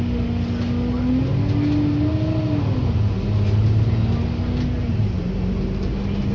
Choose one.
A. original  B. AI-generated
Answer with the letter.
A